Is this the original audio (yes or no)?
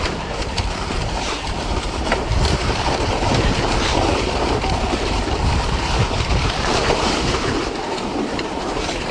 no